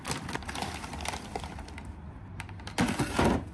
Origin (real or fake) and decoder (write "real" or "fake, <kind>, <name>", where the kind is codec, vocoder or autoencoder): real